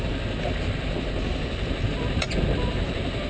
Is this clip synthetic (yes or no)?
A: yes